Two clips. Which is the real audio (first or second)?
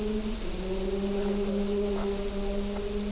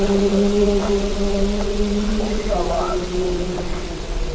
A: first